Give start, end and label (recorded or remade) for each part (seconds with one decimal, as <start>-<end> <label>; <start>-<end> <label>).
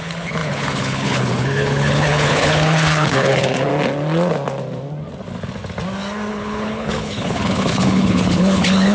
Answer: 0.0-3.7 remade; 3.7-6.3 recorded; 6.3-8.9 remade